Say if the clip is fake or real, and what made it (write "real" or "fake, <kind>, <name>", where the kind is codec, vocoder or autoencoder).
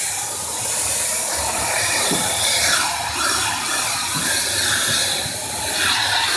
real